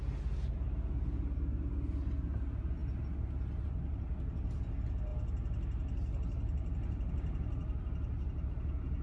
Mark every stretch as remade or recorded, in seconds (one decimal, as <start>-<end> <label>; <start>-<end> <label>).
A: 0.0-9.0 recorded